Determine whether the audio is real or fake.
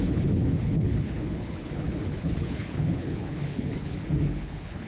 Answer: fake